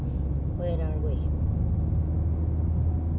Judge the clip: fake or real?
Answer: real